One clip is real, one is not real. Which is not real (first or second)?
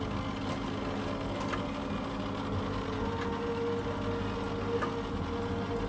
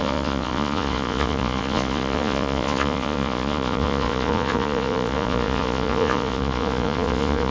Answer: second